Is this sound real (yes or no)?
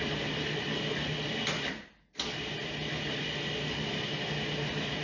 yes